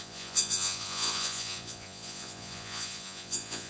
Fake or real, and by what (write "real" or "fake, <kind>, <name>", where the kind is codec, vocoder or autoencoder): fake, vocoder, Vocos